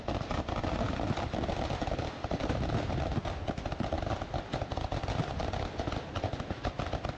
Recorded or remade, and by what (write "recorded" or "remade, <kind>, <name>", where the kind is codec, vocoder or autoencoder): recorded